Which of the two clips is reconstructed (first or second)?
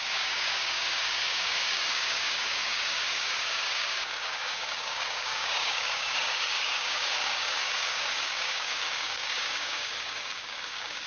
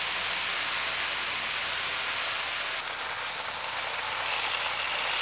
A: first